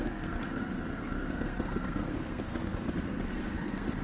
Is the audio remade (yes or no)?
yes